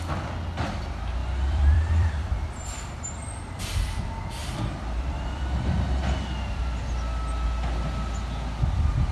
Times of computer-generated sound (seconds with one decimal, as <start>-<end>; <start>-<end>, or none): 1.2-3.6; 4.4-5.7